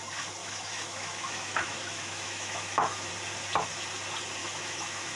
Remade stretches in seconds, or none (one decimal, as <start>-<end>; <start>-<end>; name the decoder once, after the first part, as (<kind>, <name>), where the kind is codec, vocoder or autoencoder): 0.4-3.1 (autoencoder, DAC-VAE); 4.4-5.2